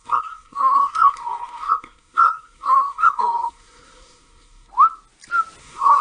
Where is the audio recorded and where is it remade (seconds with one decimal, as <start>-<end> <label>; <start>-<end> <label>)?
0.0-4.7 remade; 4.7-5.6 recorded; 5.6-6.0 remade